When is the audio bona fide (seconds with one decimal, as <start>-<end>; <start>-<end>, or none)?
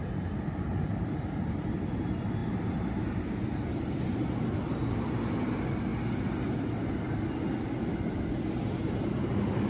0.0-9.7